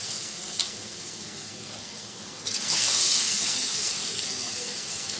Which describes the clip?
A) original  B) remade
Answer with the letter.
B